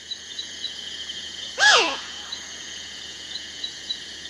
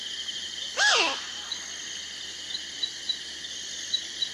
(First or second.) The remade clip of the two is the first